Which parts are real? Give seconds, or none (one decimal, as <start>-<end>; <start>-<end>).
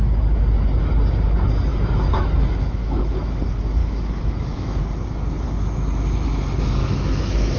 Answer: 0.0-1.7; 3.4-3.8; 4.8-6.8